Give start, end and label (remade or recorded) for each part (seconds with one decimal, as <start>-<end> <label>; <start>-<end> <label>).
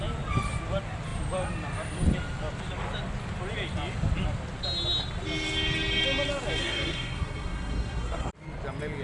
0.0-6.6 recorded; 6.6-8.3 remade; 8.3-9.0 recorded